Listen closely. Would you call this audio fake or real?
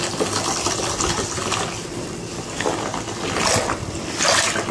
real